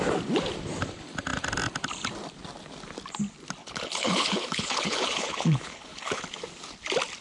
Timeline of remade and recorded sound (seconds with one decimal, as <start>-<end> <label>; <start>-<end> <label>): 0.0-3.6 recorded; 3.6-6.2 remade; 6.2-7.2 recorded